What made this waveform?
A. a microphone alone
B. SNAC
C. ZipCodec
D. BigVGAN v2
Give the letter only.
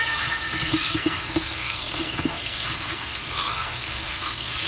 B